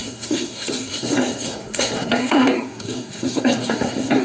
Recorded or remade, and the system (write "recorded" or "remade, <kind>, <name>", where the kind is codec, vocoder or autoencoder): remade, codec, SNAC